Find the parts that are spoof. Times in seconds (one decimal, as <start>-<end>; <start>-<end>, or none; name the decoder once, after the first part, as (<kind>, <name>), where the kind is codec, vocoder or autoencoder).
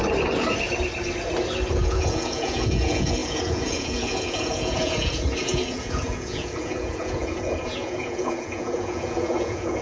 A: 1.7-9.8 (vocoder, Vocos)